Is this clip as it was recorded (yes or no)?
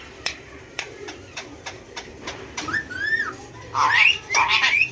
no